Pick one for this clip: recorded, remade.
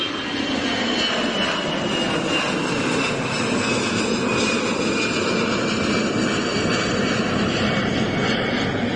recorded